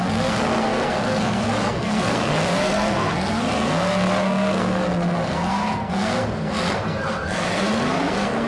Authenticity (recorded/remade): remade